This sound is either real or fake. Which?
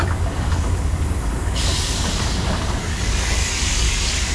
fake